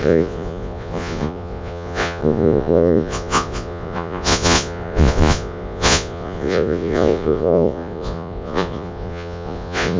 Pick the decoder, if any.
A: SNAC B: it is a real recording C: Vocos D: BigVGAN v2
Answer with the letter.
C